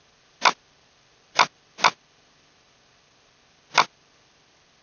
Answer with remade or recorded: recorded